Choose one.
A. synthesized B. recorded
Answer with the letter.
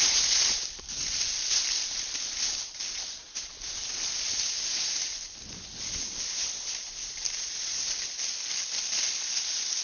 B